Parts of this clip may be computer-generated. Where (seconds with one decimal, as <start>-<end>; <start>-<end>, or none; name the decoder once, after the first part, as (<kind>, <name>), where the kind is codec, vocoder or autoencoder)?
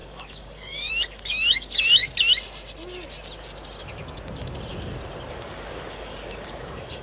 0.0-2.0 (codec, DAC); 5.3-7.0